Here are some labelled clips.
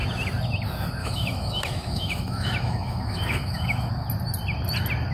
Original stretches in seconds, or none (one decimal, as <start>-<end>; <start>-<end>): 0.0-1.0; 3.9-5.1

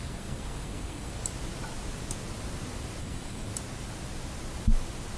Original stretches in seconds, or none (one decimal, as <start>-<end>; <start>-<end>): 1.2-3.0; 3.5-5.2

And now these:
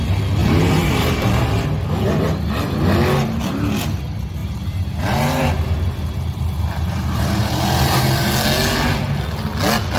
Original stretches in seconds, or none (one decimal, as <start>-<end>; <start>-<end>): 0.0-0.4; 1.3-4.4; 8.3-10.0

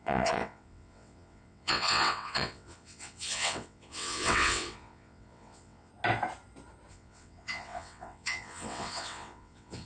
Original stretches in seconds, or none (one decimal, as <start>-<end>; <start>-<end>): 5.9-6.9

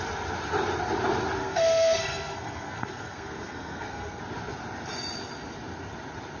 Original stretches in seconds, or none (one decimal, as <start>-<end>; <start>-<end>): 0.0-1.4; 4.2-6.4